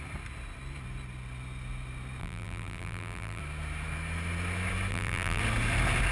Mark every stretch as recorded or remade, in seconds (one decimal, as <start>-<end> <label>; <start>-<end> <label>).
0.0-2.2 recorded; 2.2-3.4 remade; 3.4-4.9 recorded; 4.9-5.4 remade; 5.4-6.1 recorded

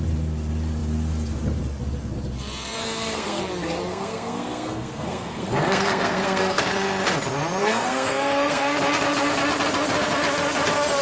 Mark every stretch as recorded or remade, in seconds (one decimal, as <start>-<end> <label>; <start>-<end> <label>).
0.0-2.8 recorded; 2.8-3.4 remade; 3.4-3.9 recorded; 3.9-6.6 remade; 6.6-7.6 recorded; 7.6-8.6 remade; 8.6-11.0 recorded

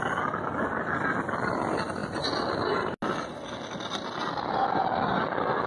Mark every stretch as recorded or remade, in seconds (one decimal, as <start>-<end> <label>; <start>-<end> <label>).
0.0-5.7 recorded

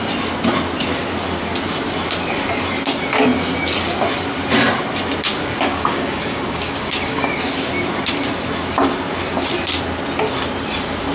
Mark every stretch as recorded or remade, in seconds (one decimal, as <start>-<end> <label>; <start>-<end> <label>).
0.0-5.3 recorded; 5.3-7.3 remade; 7.3-11.1 recorded

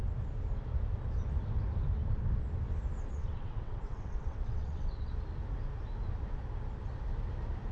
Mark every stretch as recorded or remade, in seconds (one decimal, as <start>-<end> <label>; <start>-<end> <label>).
0.0-3.1 recorded; 3.1-5.1 remade; 5.1-7.7 recorded